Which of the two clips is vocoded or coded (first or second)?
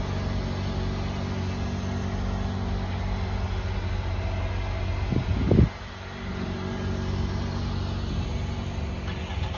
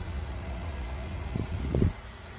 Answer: second